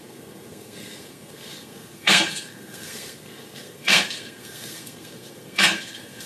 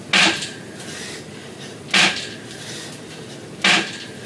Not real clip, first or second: first